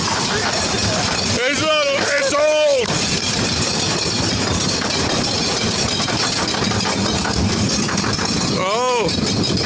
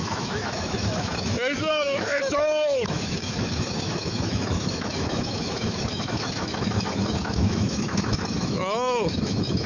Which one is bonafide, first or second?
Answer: first